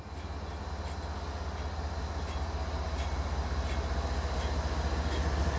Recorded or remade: recorded